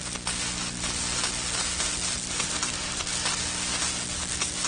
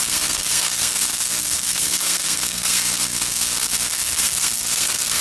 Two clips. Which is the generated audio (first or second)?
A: second